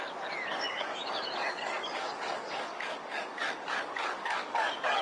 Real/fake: fake